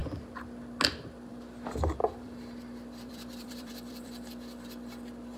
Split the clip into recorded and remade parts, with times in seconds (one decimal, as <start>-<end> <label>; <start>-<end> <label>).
0.0-2.0 recorded; 2.0-4.3 remade; 4.3-5.4 recorded